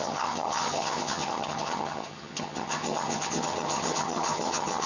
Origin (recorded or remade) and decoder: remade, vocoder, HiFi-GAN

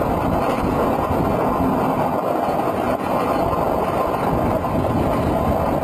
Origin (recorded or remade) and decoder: recorded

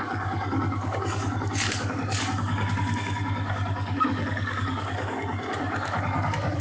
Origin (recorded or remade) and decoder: remade, codec, DAC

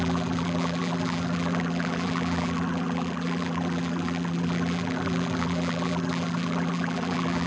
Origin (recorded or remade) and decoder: remade, vocoder, BigVGAN v2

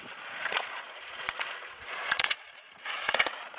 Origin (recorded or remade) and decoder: remade, vocoder, Vocos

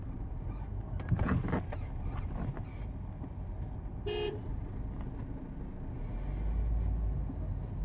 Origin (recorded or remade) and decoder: recorded